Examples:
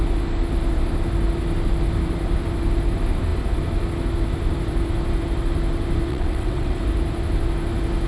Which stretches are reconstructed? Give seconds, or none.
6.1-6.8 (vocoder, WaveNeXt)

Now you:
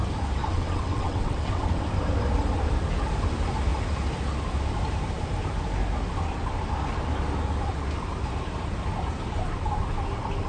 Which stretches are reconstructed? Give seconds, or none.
0.4-1.8 (vocoder, WaveNeXt)

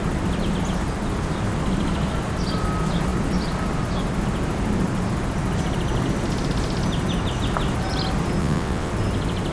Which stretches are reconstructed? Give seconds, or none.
8.4-8.9 (vocoder, WaveNeXt)